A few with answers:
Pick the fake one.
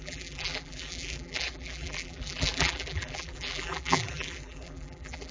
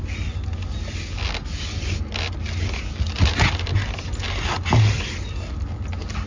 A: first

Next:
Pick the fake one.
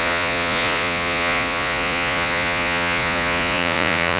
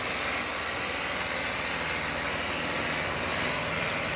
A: first